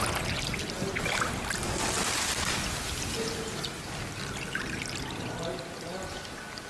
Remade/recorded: recorded